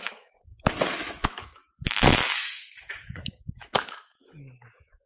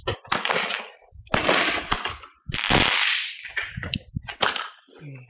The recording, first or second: second